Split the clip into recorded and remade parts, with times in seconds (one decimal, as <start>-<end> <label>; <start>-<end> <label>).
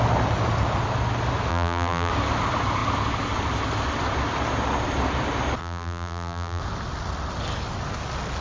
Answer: 0.0-1.5 recorded; 1.5-2.1 remade; 2.1-5.6 recorded; 5.6-6.6 remade; 6.6-8.4 recorded